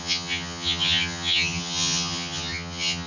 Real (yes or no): no